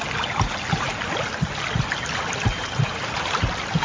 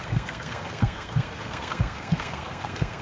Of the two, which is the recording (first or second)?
first